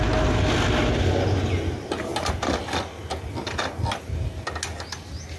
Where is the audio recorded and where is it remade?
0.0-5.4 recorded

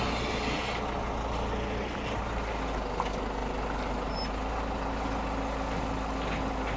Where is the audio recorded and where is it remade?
0.0-6.8 recorded

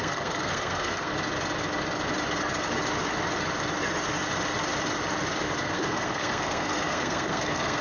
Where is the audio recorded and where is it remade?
0.0-1.1 remade; 1.1-5.6 recorded; 5.6-7.8 remade